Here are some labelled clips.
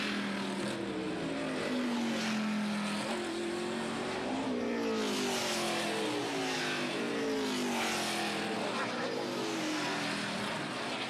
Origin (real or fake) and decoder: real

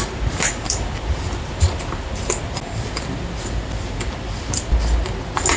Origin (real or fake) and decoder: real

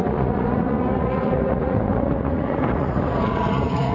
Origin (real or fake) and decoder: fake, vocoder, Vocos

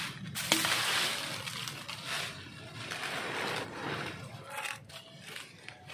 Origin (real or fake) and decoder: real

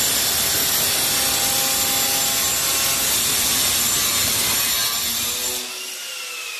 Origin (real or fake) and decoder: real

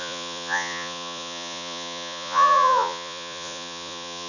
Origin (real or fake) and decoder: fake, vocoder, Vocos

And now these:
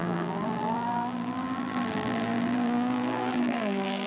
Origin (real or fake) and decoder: fake, vocoder, BigVGAN v2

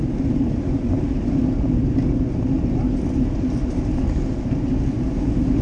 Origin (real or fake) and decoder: real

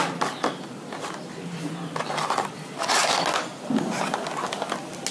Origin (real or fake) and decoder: real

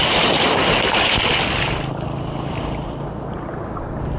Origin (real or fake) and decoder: real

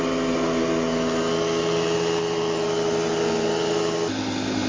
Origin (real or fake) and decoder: real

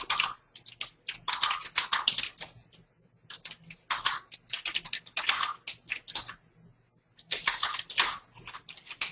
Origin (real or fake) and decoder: real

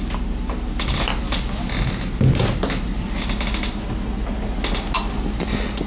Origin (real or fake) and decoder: real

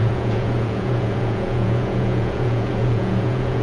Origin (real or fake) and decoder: fake, vocoder, Vocos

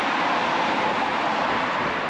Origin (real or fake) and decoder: real